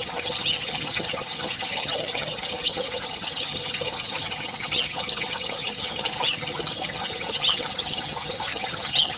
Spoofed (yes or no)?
yes